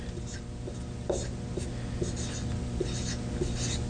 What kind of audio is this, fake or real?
real